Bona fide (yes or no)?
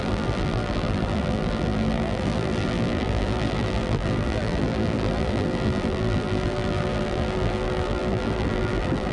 no